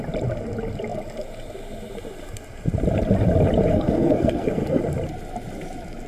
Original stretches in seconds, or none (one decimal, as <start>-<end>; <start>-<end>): 0.0-3.7; 4.8-6.1